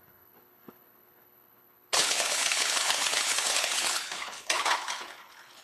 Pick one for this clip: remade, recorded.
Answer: remade